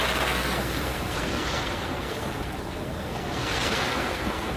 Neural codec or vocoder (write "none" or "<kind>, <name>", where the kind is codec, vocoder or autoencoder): codec, SNAC